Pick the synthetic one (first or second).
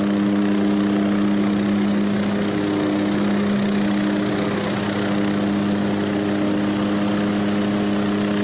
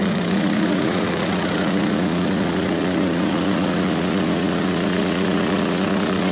second